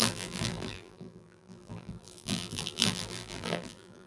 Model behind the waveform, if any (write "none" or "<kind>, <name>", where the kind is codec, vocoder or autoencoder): vocoder, BigVGAN v2